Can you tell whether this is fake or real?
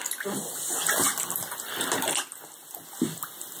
real